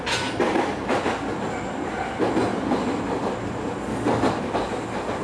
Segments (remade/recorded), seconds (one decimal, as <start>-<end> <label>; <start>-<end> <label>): 0.0-3.9 recorded; 3.9-4.4 remade; 4.4-5.2 recorded

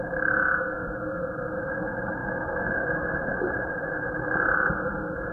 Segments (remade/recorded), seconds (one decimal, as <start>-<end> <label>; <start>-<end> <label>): 0.0-5.3 recorded

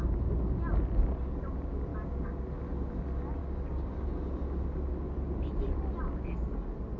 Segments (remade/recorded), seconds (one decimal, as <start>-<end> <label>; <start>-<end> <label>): 0.0-3.4 recorded; 3.4-3.9 remade; 3.9-7.0 recorded

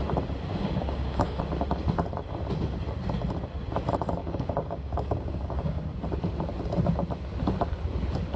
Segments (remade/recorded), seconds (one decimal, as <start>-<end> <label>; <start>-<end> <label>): 0.0-0.5 recorded; 0.5-1.4 remade; 1.4-4.2 recorded; 4.2-5.9 remade; 5.9-8.4 recorded